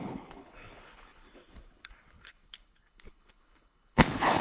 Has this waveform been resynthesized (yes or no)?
yes